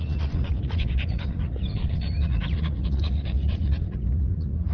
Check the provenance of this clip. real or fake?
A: fake